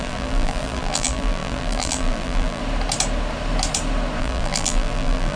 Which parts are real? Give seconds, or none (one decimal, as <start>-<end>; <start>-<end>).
2.6-4.2